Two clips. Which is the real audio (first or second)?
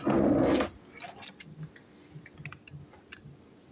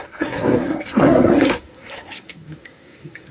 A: first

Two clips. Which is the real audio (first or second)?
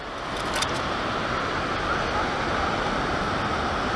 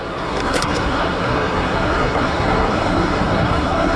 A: first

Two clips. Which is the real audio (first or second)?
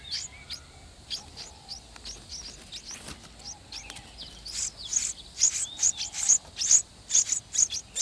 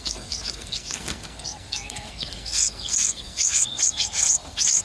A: first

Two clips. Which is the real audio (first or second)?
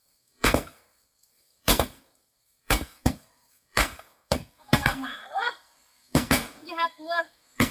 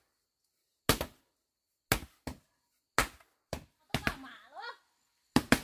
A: second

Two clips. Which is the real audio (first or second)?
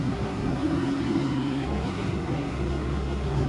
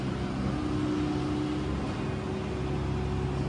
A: second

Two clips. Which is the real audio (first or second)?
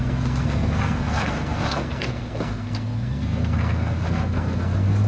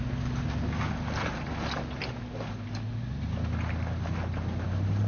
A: second